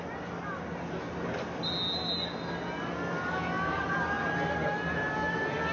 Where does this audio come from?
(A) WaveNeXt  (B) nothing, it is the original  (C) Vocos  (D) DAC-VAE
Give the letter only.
B